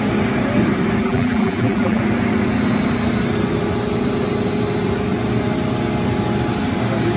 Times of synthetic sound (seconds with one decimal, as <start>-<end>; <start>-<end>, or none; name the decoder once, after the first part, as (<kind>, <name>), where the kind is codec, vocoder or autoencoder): 1.0-2.0 (vocoder, BigVGAN v2)